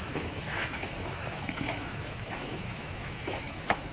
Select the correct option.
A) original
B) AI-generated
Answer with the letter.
B